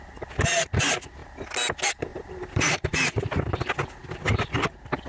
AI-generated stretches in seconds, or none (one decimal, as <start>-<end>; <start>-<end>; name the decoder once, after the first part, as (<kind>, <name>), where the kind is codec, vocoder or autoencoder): 2.1-3.4 (vocoder, BigVGAN v2)